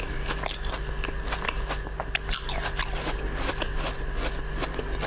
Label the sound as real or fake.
real